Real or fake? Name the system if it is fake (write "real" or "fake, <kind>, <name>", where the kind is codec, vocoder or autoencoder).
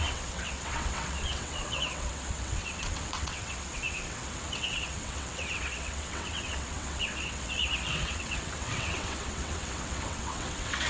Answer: fake, vocoder, WaveNeXt